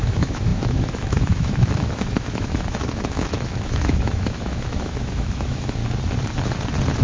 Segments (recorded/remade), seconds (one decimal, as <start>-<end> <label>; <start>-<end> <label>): 0.0-5.8 remade; 5.8-7.0 recorded